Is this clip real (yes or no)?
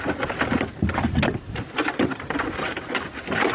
yes